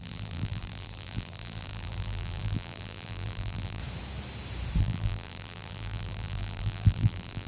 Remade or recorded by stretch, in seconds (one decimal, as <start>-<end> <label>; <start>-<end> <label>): 0.0-3.8 remade; 3.8-4.8 recorded; 4.8-7.5 remade